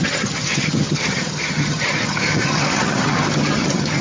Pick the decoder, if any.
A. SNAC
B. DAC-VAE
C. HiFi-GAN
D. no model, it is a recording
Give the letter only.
C